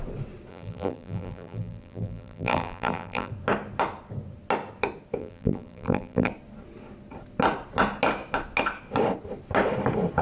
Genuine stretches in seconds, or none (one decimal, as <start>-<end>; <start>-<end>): 0.0-0.5; 3.3-5.2; 6.3-10.2